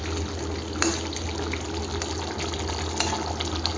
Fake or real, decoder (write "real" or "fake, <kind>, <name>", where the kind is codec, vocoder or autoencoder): real